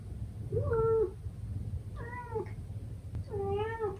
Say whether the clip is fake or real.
real